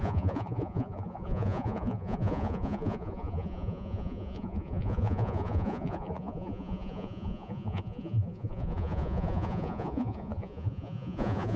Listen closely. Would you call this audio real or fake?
fake